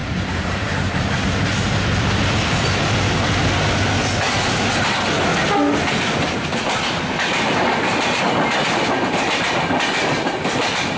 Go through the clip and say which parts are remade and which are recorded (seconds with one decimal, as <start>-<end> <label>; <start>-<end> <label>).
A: 0.0-1.1 remade; 1.1-11.0 recorded